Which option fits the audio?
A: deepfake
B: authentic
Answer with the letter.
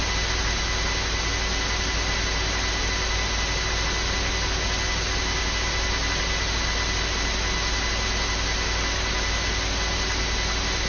B